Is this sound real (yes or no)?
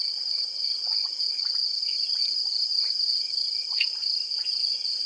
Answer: no